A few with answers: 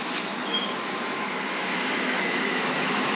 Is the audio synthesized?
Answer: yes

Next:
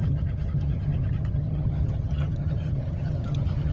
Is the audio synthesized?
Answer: yes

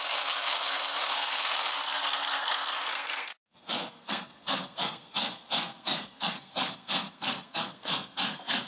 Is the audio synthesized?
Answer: yes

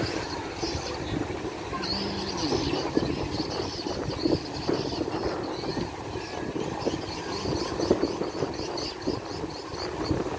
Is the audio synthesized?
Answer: no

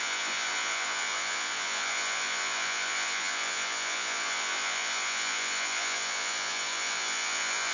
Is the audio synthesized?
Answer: yes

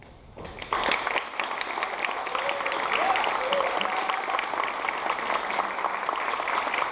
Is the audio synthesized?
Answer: no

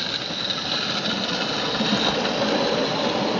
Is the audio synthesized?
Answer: no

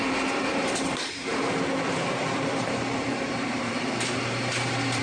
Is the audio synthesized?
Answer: yes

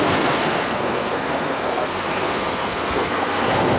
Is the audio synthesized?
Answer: yes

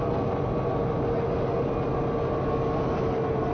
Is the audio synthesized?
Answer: no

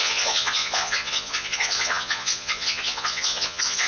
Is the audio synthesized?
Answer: yes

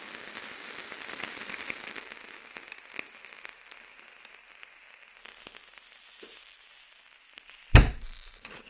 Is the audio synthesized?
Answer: no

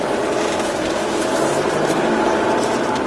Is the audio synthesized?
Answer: yes